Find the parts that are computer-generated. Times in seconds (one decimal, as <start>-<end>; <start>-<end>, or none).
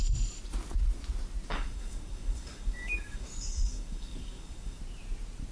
1.5-4.8